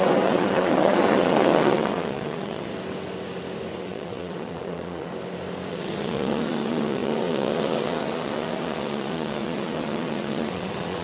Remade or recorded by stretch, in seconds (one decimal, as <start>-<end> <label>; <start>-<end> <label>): 0.0-2.7 remade; 2.7-3.8 recorded; 3.8-5.1 remade; 5.1-5.7 recorded; 5.7-11.0 remade